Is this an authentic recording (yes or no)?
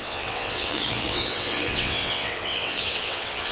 no